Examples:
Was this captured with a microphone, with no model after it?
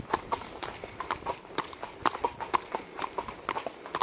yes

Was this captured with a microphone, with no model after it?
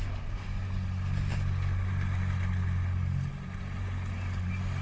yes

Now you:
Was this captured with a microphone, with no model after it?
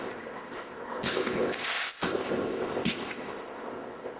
no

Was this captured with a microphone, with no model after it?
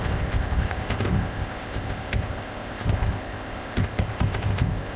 no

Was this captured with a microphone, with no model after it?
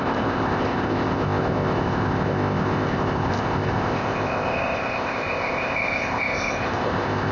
no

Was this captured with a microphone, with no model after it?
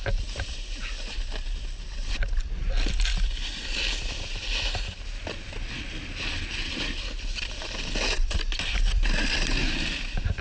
yes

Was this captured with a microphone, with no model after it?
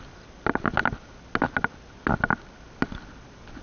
yes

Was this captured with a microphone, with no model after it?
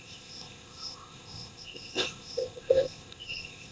no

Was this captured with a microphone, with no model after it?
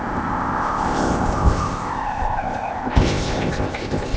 no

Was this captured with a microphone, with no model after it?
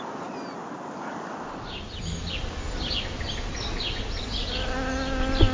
yes